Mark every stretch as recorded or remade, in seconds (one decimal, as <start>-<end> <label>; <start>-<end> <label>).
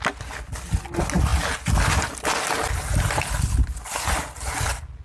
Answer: 0.0-5.0 recorded